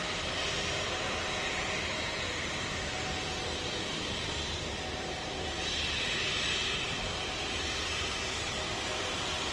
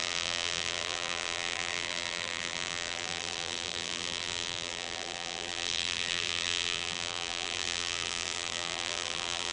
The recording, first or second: first